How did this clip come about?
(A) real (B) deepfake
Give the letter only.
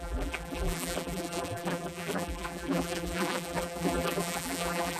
B